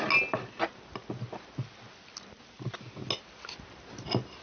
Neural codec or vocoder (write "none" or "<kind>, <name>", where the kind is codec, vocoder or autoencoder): none